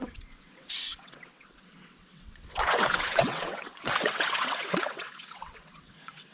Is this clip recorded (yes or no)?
no